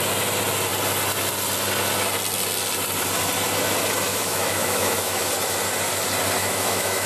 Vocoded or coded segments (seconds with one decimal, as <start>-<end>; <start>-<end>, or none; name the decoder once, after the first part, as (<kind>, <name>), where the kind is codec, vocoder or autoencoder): 4.1-5.3 (autoencoder, DAC-VAE); 6.4-7.1